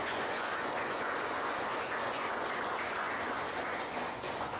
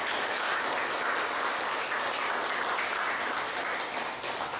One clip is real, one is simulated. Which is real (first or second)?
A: second